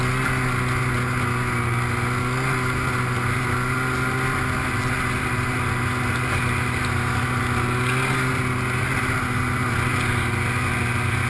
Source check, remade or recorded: recorded